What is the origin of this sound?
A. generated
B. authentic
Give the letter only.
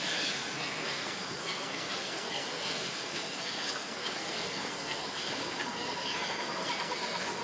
A